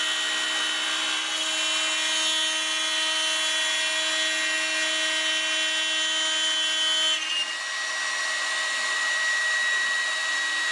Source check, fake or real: real